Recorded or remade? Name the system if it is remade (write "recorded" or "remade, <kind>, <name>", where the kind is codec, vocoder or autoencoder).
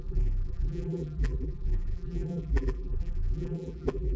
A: remade, vocoder, BigVGAN v2